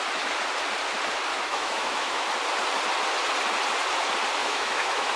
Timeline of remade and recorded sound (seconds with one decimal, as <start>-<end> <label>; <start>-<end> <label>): 0.0-1.3 recorded; 1.3-2.2 remade; 2.2-4.4 recorded; 4.4-5.2 remade